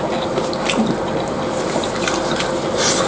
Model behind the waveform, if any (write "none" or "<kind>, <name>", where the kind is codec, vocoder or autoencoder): none